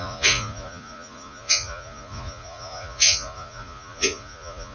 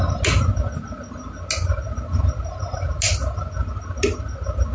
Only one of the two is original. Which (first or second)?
second